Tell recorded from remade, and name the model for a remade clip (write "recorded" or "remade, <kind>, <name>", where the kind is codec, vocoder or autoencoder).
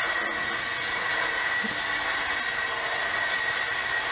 recorded